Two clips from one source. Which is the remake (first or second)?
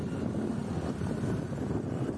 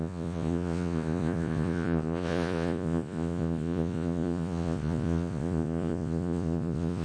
second